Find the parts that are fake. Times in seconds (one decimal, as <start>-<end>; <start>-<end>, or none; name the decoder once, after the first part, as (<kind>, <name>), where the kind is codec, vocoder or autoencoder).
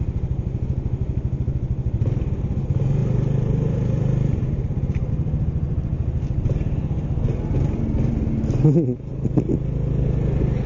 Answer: 3.0-5.1 (vocoder, BigVGAN v2)